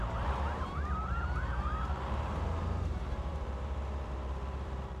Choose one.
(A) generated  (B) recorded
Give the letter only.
A